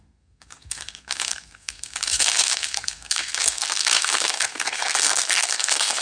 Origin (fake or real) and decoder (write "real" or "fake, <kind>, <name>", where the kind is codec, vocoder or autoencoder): fake, codec, SNAC